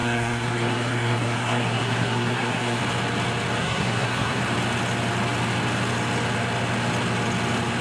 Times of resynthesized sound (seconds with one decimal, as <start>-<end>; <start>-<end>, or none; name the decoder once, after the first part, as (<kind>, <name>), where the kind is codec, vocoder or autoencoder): 0.0-2.8 (codec, SNAC); 3.6-4.4